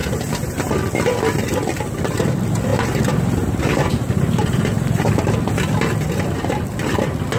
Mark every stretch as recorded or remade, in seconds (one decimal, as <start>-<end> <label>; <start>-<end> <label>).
0.0-0.7 remade; 0.7-2.7 recorded; 2.7-5.1 remade; 5.1-7.4 recorded